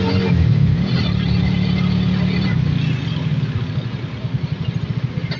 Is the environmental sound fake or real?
real